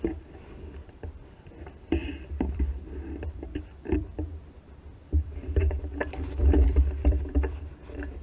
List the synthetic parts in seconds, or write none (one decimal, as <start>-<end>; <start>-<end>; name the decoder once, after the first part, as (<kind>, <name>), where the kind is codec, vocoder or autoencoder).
0.0-8.2 (vocoder, BigVGAN v2)